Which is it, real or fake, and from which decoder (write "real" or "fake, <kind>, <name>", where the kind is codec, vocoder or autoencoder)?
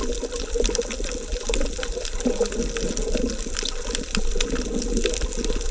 real